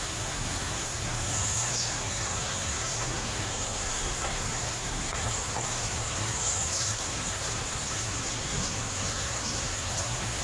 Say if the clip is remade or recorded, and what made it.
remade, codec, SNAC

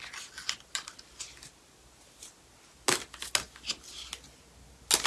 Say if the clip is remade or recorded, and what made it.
recorded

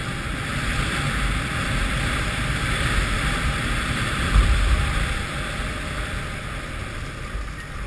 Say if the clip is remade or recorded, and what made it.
recorded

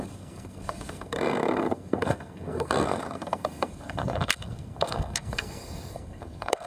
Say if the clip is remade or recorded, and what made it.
remade, codec, SNAC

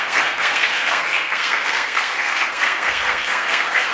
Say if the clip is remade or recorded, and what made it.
remade, codec, SNAC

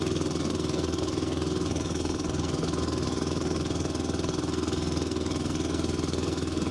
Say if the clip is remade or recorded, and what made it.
remade, codec, SNAC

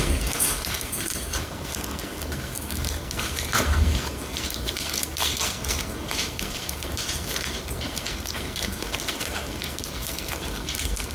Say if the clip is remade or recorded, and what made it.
remade, codec, SNAC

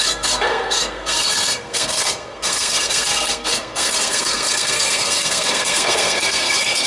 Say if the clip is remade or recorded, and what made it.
remade, codec, SNAC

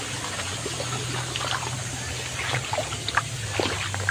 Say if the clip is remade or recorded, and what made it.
recorded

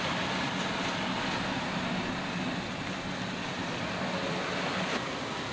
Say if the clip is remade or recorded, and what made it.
recorded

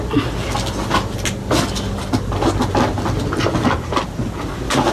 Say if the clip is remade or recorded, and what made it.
recorded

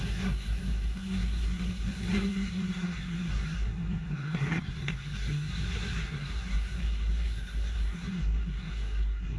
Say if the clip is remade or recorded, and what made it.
remade, codec, SNAC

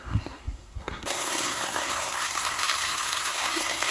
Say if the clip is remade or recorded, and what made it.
remade, codec, SNAC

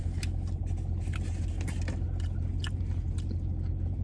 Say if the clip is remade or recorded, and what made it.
recorded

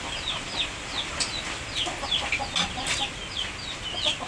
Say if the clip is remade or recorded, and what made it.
recorded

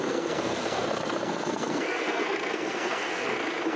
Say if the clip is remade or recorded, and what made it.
remade, codec, SNAC